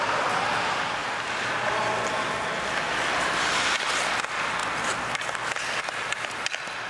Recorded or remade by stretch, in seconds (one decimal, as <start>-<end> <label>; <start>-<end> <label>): 0.0-6.9 recorded